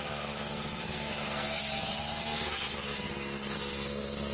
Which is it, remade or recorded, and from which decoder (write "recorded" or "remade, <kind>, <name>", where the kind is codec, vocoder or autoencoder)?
remade, codec, SNAC